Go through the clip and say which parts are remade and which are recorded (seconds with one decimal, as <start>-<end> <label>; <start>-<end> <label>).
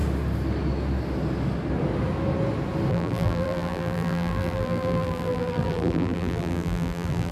0.0-2.9 recorded; 2.9-7.3 remade